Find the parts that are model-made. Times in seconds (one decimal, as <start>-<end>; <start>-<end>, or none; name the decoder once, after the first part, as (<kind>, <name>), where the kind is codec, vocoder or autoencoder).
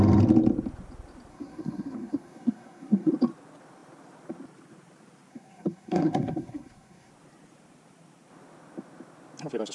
1.3-3.1 (codec, SNAC); 5.3-7.1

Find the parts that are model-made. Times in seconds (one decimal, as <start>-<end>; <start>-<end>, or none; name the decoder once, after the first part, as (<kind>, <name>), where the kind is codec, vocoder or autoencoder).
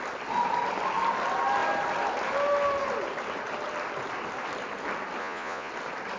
5.2-5.7 (vocoder, Vocos)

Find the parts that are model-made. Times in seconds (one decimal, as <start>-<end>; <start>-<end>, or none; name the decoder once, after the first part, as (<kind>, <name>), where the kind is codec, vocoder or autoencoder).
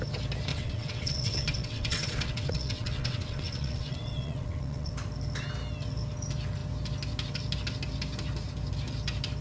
0.5-4.9 (vocoder, WaveNeXt)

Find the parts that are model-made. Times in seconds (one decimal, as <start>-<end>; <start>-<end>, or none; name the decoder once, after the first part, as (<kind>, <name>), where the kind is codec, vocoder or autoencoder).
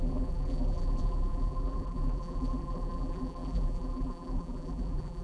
0.0-5.2 (vocoder, BigVGAN v2)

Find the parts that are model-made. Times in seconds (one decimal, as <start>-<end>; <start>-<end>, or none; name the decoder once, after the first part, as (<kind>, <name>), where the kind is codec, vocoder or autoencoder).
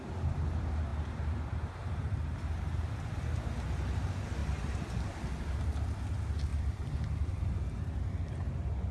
6.5-7.8 (vocoder, BigVGAN v2)